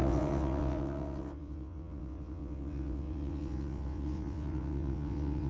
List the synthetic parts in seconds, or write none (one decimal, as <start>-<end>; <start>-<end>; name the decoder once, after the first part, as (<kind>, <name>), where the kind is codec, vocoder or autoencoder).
0.0-5.5 (vocoder, WaveNeXt)